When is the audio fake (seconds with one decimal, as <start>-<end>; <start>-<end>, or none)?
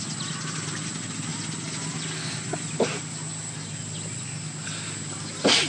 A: none